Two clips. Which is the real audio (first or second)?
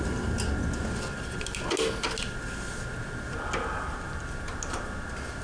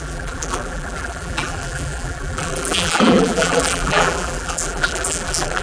first